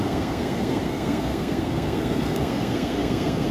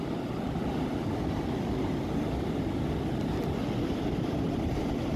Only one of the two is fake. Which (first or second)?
first